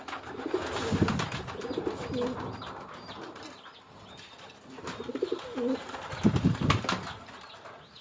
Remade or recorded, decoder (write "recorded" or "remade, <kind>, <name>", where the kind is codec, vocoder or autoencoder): recorded